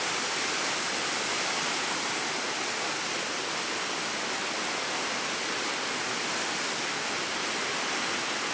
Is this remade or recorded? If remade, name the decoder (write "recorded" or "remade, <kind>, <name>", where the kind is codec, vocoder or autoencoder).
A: recorded